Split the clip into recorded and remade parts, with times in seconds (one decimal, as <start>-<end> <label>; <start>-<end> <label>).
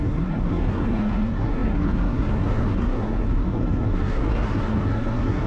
0.0-5.5 remade